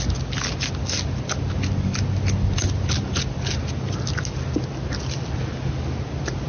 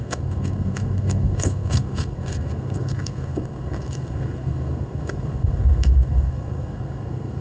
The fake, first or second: second